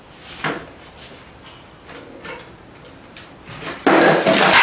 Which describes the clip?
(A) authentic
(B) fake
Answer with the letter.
A